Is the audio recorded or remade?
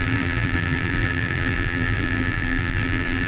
remade